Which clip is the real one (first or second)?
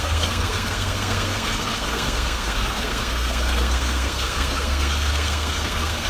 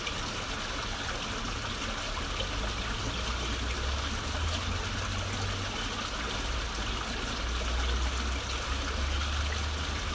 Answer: second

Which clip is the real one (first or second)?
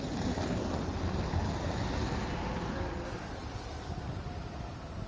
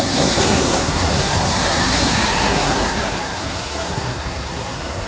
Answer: first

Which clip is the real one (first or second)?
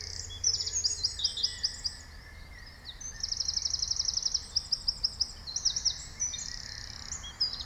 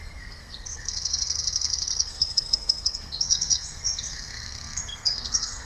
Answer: first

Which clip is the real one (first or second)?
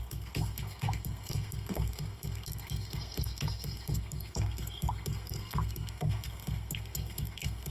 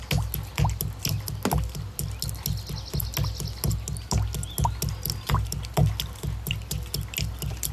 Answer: second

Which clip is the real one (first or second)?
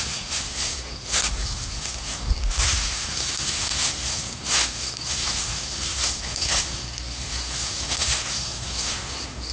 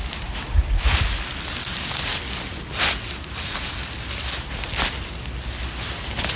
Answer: second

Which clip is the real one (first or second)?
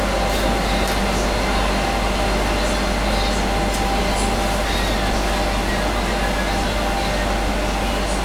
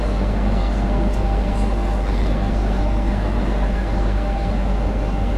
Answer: first